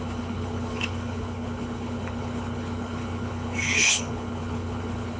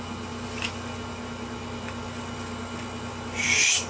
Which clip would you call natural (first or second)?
second